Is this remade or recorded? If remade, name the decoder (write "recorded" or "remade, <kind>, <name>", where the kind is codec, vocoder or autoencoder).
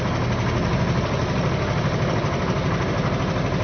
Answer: remade, vocoder, BigVGAN v2